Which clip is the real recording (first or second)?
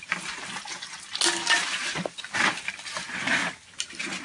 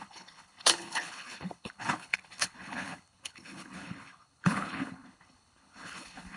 first